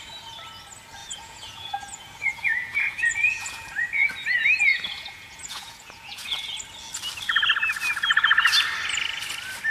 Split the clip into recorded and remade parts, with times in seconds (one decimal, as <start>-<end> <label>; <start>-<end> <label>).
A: 0.0-1.0 recorded; 1.0-4.1 remade; 4.1-4.7 recorded; 4.7-6.6 remade; 6.6-9.7 recorded